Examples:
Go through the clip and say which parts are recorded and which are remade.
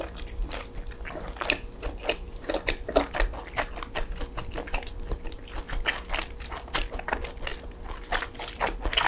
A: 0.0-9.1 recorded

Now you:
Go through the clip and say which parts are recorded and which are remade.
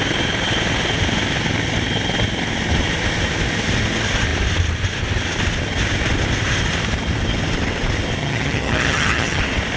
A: 0.0-8.2 recorded; 8.2-9.4 remade; 9.4-9.8 recorded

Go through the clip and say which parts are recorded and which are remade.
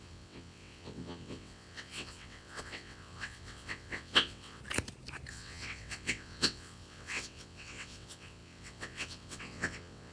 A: 0.0-4.6 remade; 4.6-5.3 recorded; 5.3-10.1 remade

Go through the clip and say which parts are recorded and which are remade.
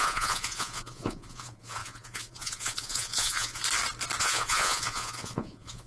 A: 0.0-3.6 remade; 3.6-4.2 recorded; 4.2-5.9 remade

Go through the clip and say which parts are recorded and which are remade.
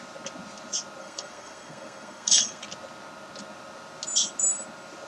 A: 0.0-1.0 recorded; 1.0-2.6 remade; 2.6-5.1 recorded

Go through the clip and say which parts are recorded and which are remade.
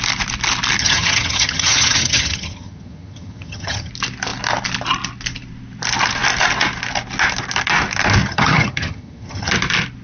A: 0.0-0.8 recorded; 0.8-3.9 remade; 3.9-8.2 recorded; 8.2-9.5 remade; 9.5-10.0 recorded